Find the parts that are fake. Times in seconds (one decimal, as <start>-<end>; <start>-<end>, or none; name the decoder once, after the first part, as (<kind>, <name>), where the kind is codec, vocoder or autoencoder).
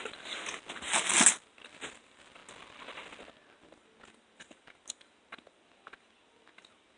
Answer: none